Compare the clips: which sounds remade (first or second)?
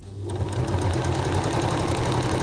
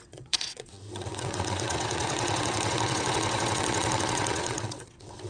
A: second